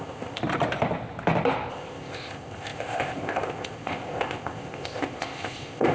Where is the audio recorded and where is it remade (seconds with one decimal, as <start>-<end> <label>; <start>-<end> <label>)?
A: 0.0-0.4 remade; 0.4-1.7 recorded; 1.7-5.9 remade